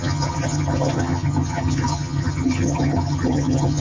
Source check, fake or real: fake